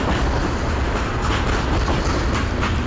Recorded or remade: recorded